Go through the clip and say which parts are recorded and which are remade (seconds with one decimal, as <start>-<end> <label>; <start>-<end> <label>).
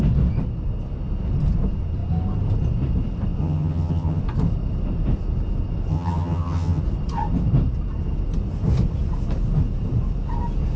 0.0-3.4 recorded; 3.4-4.2 remade; 4.2-5.9 recorded; 5.9-6.8 remade; 6.8-10.8 recorded